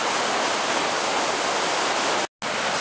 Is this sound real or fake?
real